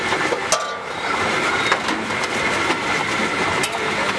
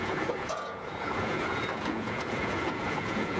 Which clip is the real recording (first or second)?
first